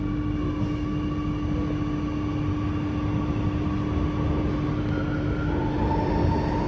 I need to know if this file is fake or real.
real